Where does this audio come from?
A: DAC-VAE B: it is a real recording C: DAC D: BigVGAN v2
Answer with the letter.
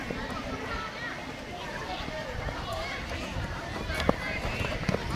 B